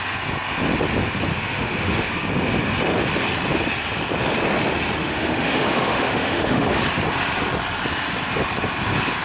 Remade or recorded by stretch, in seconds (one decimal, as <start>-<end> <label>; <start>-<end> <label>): 0.0-1.3 recorded; 1.3-2.1 remade; 2.1-5.0 recorded; 5.0-6.8 remade; 6.8-9.2 recorded